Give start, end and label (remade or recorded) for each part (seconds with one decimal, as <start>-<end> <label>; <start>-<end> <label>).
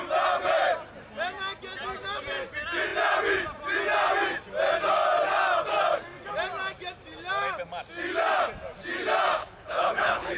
0.0-9.4 recorded; 9.4-10.4 remade